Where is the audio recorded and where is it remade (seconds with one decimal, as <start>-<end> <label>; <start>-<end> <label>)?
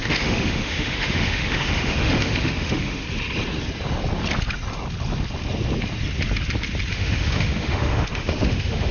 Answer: 0.0-3.0 remade; 3.0-6.9 recorded; 6.9-8.9 remade